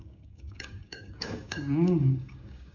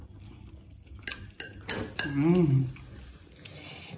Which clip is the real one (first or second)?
second